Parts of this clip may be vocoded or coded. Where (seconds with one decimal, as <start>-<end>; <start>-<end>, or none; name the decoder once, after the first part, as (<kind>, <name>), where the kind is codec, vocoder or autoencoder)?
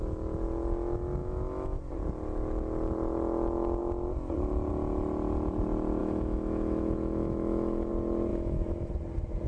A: 1.2-1.8 (autoencoder, DAC-VAE); 6.0-7.9; 8.3-8.9